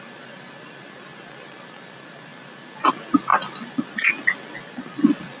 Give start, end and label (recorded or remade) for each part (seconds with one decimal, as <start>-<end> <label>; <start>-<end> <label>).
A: 0.0-5.4 recorded